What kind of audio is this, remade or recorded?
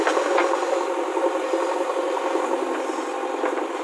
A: remade